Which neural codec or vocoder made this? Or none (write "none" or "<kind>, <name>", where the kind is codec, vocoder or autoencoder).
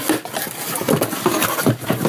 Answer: none